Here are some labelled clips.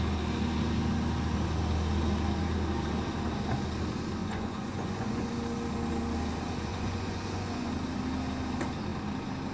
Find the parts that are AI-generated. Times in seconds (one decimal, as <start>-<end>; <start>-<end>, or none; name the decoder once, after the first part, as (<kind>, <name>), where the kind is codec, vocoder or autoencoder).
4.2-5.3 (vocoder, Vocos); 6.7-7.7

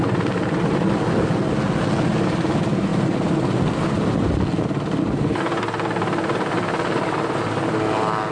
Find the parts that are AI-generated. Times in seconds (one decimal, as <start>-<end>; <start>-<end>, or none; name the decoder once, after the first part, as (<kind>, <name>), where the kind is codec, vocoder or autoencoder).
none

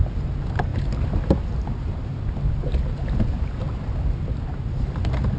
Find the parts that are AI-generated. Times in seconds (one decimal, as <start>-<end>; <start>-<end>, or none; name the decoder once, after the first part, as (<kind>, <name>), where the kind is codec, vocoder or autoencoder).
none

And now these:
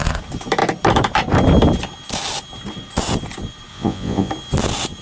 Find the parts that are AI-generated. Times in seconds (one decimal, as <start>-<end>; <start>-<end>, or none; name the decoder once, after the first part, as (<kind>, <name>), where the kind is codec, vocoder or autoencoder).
3.7-4.3 (vocoder, Vocos)